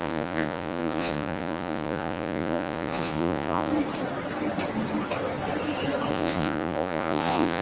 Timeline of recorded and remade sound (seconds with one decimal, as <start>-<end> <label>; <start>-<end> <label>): 0.0-3.7 remade; 3.7-6.1 recorded; 6.1-7.6 remade